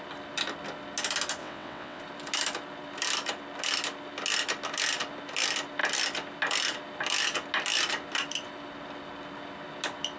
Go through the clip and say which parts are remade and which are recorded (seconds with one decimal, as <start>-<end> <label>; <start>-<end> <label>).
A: 0.0-1.4 recorded; 1.4-2.0 remade; 2.0-10.2 recorded